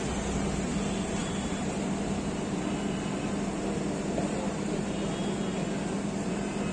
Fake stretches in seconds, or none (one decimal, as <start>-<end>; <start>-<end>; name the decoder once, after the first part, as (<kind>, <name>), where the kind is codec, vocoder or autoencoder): none